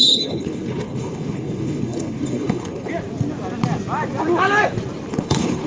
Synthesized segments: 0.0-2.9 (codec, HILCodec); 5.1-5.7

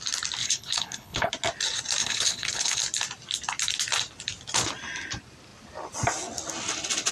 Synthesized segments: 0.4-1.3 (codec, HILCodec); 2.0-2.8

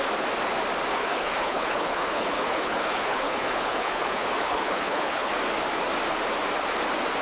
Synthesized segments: 1.0-5.3 (codec, HILCodec)

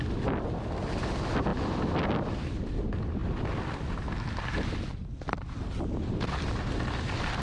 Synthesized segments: none

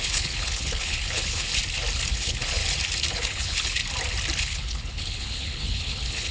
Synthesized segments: 0.0-1.5 (codec, HILCodec); 2.1-2.6; 3.1-3.8; 4.4-6.3

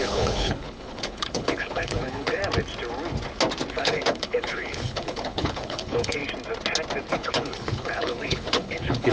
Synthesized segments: 0.0-2.4 (codec, HILCodec); 3.7-6.2; 7.1-9.1

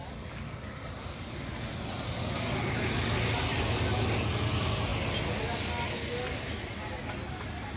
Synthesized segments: none